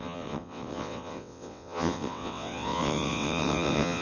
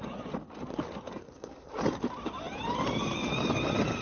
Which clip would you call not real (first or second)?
first